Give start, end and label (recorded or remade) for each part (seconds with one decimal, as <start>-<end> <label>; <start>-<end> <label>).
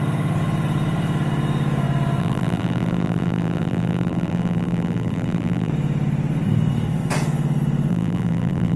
0.0-2.2 recorded; 2.2-5.7 remade; 5.7-7.9 recorded; 7.9-8.8 remade